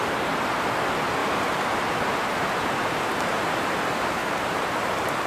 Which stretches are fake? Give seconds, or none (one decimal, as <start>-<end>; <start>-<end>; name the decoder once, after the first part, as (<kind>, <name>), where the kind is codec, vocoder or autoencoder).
1.2-3.7 (vocoder, BigVGAN v2); 4.2-5.3